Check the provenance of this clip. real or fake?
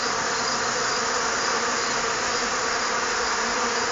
real